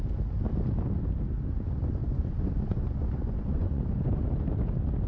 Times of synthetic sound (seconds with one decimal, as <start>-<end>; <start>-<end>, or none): 2.0-4.2